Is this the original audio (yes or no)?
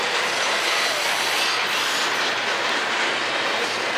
yes